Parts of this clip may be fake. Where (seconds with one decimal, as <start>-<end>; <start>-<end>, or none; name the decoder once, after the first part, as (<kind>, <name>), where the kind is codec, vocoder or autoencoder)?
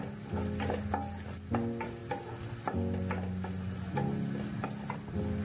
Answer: none